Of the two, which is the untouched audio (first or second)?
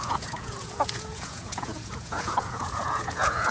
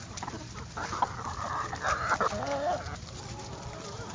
second